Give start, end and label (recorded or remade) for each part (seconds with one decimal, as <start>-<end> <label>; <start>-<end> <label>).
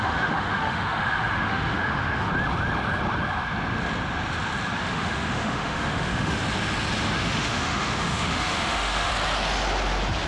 0.0-2.3 remade; 2.3-4.8 recorded; 4.8-6.4 remade; 6.4-7.2 recorded; 7.2-9.1 remade; 9.1-10.3 recorded